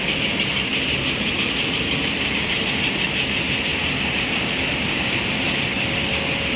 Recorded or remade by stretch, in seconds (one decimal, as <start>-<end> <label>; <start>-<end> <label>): 0.0-6.6 recorded